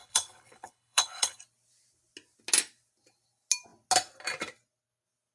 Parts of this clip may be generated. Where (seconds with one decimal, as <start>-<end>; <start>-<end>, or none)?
0.0-1.4